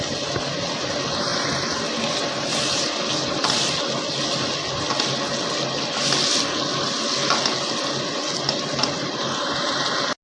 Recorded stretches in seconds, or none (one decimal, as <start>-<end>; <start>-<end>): 0.0-10.2